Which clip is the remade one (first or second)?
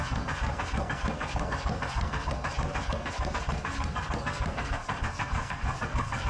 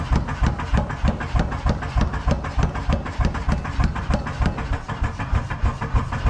first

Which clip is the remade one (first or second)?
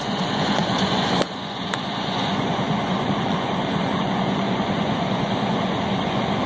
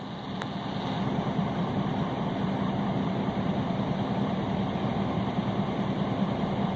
first